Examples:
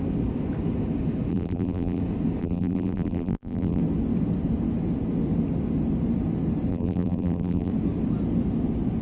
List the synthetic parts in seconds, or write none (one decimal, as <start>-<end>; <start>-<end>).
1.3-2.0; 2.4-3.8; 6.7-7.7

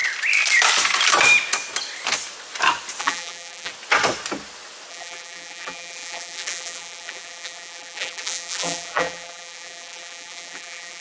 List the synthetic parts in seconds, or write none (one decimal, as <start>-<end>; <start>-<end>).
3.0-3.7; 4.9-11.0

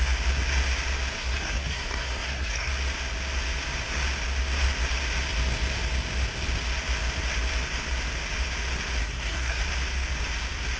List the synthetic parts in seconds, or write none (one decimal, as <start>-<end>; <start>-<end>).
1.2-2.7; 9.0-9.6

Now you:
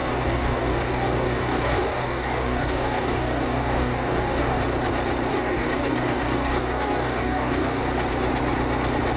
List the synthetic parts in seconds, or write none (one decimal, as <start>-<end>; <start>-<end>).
0.0-4.6; 5.3-7.8

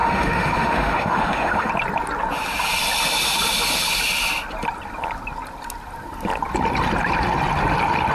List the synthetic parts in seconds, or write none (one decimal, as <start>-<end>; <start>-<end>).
0.0-1.7